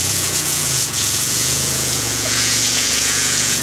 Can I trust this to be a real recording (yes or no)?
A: no